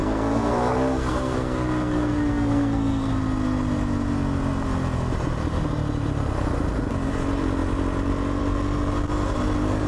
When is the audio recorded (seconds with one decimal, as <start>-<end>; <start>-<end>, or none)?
3.1-9.9